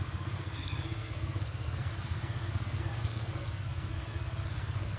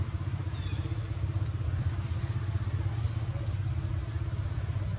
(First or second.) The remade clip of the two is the first